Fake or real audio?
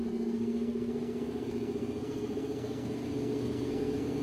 fake